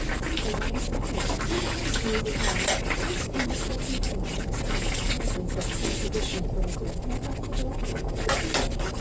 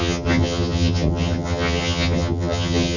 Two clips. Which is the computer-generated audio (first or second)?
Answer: second